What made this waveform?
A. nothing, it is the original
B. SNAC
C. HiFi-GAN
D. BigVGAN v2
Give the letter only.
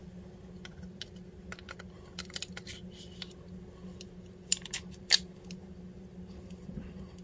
A